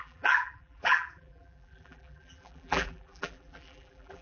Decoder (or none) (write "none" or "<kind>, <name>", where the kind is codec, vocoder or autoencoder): vocoder, BigVGAN v2